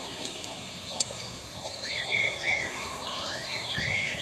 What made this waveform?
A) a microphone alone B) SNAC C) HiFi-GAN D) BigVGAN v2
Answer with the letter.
B